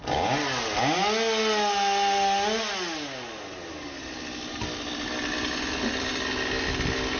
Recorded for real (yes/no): yes